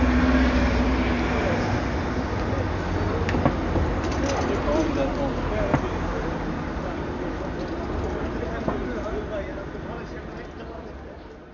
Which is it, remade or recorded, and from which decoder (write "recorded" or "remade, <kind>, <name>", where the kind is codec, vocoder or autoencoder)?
recorded